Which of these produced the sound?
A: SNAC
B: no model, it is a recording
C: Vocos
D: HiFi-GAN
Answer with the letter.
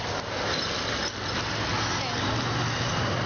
B